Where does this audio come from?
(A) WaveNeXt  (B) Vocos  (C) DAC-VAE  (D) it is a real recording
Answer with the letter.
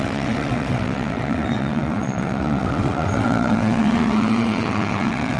A